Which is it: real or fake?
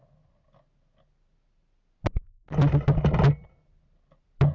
real